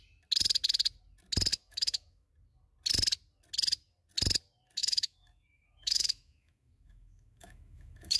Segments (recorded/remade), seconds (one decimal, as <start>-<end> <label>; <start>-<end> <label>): 0.0-1.5 recorded; 1.5-2.3 remade; 2.3-4.8 recorded; 4.8-8.2 remade